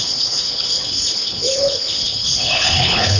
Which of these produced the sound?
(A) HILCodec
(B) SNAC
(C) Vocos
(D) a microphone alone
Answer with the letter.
A